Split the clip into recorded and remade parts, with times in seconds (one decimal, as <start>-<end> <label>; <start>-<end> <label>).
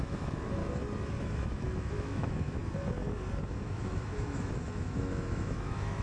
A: 0.0-0.6 remade; 0.6-1.2 recorded; 1.2-2.6 remade; 2.6-3.4 recorded; 3.4-6.0 remade